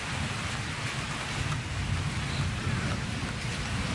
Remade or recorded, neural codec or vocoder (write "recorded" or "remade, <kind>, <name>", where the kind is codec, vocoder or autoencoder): recorded